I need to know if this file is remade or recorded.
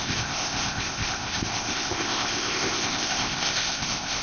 remade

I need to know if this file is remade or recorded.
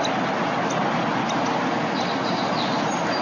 recorded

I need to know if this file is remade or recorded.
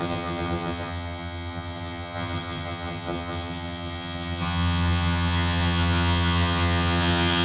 remade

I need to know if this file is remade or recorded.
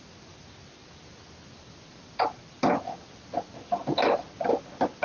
recorded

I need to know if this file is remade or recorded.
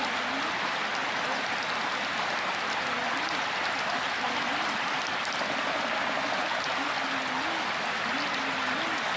recorded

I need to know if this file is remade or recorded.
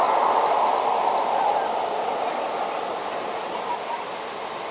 recorded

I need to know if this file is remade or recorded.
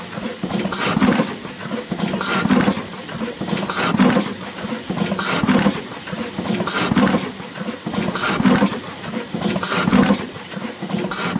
recorded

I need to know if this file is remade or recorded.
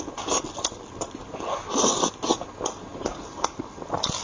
recorded